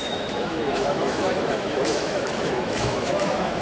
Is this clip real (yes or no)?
no